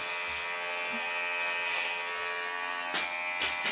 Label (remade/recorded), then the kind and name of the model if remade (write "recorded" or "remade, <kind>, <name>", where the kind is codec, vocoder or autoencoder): recorded